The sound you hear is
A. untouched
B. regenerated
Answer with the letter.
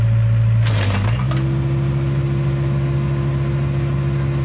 A